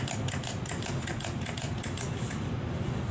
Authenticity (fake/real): real